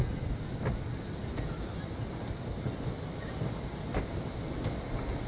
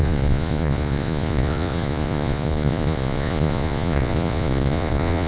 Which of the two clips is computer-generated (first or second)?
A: second